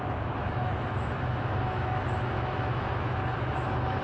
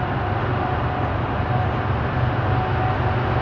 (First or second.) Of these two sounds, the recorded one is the second